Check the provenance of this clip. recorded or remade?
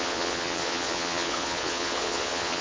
remade